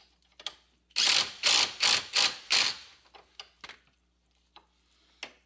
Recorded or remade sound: recorded